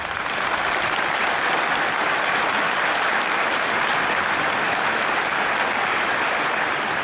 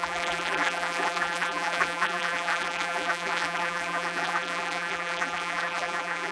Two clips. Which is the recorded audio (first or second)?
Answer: first